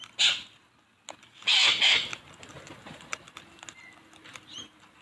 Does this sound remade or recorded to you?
recorded